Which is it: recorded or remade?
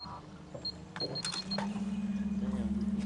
recorded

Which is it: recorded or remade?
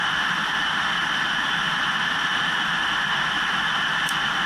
recorded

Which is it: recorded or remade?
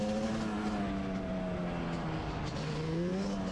recorded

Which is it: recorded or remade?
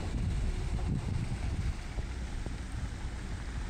recorded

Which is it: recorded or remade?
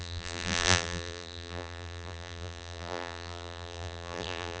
remade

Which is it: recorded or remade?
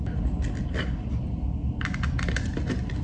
recorded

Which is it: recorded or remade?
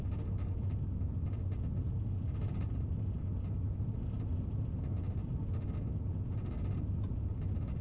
recorded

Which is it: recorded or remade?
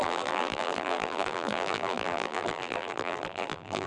remade